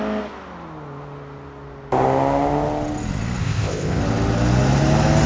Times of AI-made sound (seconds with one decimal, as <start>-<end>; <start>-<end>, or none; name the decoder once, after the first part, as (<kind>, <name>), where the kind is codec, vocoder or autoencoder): 3.4-4.0 (codec, ZipCodec)

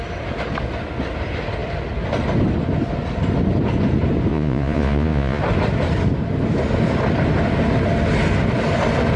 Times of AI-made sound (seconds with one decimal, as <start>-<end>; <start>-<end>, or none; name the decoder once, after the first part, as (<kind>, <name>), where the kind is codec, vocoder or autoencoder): 4.3-5.4 (vocoder, Vocos)

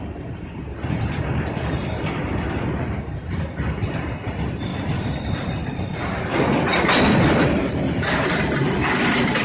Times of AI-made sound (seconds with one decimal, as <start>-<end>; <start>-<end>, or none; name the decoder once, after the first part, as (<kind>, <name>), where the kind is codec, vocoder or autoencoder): none

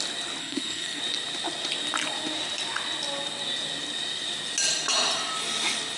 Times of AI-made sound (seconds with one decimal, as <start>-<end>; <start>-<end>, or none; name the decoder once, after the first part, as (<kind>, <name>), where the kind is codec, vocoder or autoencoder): 0.4-1.0 (codec, SNAC)

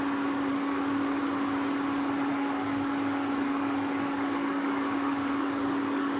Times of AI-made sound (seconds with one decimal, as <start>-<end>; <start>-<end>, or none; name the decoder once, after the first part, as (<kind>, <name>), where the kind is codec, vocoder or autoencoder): 0.5-1.2 (codec, DAC); 2.3-6.2

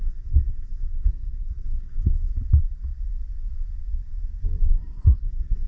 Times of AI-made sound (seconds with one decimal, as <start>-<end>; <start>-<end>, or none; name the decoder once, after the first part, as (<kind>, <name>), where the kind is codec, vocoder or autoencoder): 0.0-2.3 (codec, SNAC); 4.7-5.7

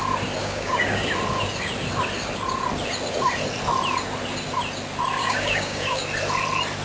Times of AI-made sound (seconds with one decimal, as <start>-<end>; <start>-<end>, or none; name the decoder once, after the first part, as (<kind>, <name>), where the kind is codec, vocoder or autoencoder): 0.4-1.1 (codec, DAC); 5.2-6.0